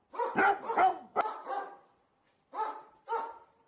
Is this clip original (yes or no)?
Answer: yes